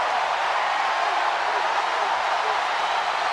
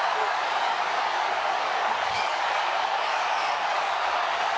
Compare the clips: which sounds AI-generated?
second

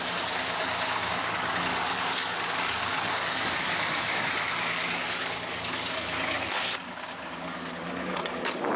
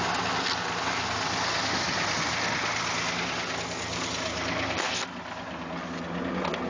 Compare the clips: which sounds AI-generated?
first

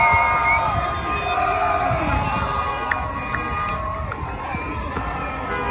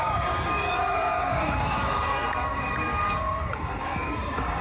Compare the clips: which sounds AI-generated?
second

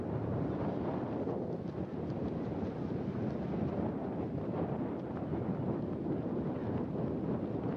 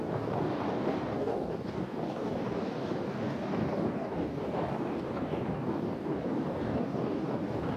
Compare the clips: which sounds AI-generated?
second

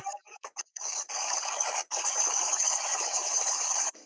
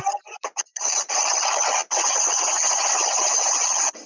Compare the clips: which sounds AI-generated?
first